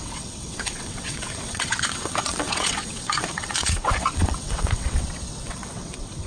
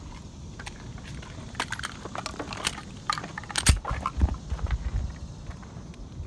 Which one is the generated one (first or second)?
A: first